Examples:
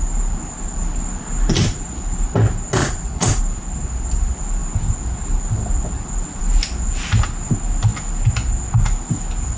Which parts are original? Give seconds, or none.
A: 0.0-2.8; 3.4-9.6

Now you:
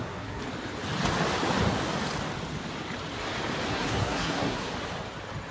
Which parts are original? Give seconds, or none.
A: 0.4-3.7; 4.7-5.5

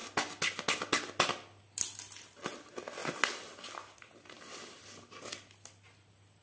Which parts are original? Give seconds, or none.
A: 0.0-6.4

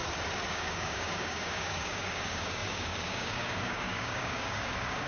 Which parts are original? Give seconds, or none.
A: 0.0-0.5

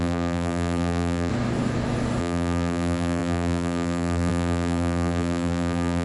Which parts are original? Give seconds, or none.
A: 1.3-2.2